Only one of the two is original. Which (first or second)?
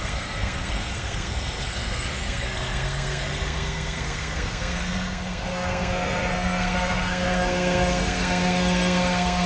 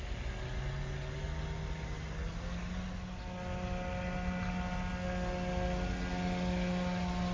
second